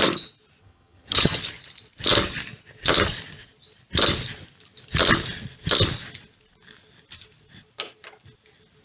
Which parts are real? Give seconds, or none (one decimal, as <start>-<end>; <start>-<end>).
0.0-0.6; 1.4-8.8